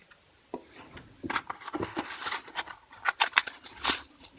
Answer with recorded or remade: remade